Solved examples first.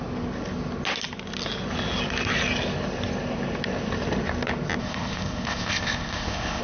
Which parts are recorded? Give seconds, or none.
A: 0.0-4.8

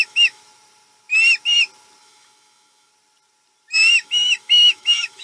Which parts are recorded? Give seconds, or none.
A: 0.4-2.0; 2.9-3.9

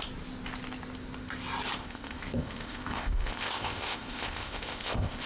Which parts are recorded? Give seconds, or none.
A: 0.0-1.8